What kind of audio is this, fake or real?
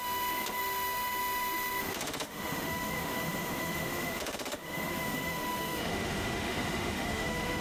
fake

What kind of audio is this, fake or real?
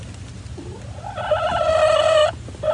real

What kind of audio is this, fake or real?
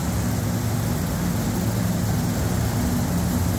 real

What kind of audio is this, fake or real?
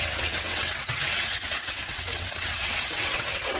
fake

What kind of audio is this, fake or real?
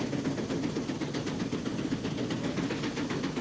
real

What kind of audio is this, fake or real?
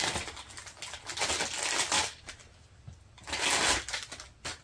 real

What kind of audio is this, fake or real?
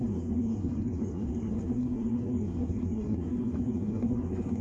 fake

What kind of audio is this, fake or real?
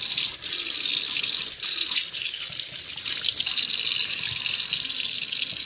real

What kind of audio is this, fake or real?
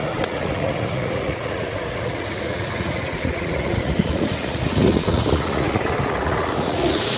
fake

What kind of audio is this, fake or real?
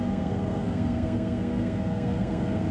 fake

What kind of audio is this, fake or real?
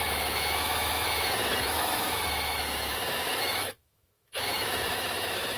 fake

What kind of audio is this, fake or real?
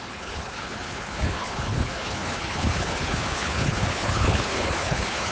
fake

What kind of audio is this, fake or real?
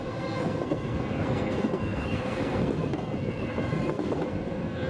fake